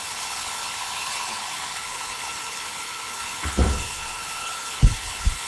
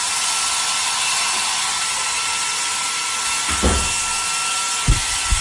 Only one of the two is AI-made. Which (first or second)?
first